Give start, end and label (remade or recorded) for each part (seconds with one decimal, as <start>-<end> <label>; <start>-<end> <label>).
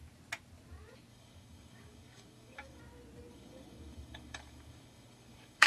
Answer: 0.0-1.1 recorded; 1.1-2.8 remade; 2.8-3.3 recorded; 3.3-5.7 remade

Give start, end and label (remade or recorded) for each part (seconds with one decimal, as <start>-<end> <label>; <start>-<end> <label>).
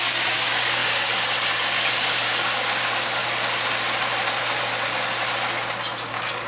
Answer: 0.0-3.2 remade; 3.2-6.1 recorded; 6.1-6.5 remade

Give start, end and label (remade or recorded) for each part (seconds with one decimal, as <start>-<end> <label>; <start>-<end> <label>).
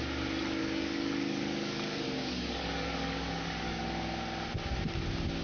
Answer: 0.0-0.6 recorded; 0.6-3.8 remade; 3.8-5.4 recorded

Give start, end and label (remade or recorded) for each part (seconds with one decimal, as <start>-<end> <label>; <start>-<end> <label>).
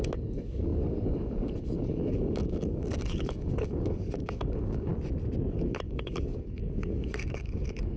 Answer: 0.0-4.9 remade; 4.9-5.5 recorded; 5.5-8.0 remade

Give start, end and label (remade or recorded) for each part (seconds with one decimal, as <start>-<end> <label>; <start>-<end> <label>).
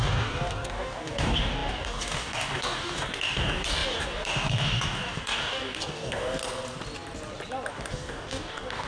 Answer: 0.0-6.4 remade; 6.4-7.7 recorded; 7.7-8.9 remade